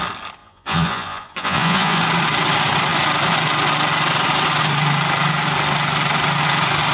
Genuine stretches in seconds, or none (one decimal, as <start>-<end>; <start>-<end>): 0.0-0.4; 2.0-6.9